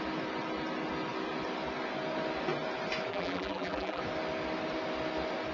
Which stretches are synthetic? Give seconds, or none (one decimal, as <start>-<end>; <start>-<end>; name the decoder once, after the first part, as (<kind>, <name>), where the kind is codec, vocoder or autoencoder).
3.1-4.0 (vocoder, BigVGAN v2)